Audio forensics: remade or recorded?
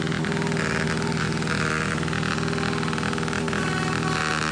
recorded